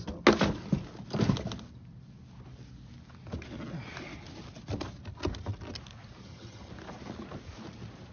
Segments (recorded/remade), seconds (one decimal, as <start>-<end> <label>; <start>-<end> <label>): 0.0-6.2 recorded; 6.2-6.7 remade; 6.7-8.1 recorded